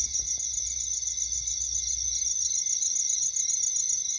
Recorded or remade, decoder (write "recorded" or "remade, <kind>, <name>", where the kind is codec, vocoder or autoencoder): recorded